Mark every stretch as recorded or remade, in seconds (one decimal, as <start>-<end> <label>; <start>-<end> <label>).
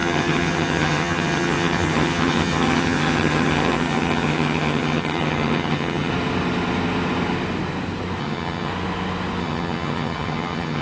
0.0-6.1 remade; 6.1-8.2 recorded; 8.2-8.7 remade; 8.7-9.4 recorded; 9.4-10.8 remade